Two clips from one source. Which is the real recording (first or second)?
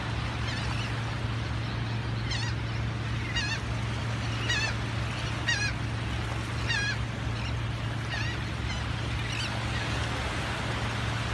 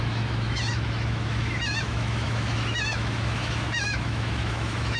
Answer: first